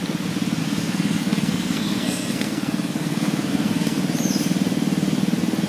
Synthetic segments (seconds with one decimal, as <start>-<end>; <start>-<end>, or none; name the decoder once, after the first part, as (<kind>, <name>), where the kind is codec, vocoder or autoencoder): 0.6-4.0 (codec, SNAC)